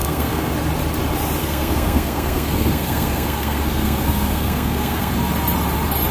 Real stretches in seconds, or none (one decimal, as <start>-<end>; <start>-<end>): 0.5-1.4; 5.1-6.1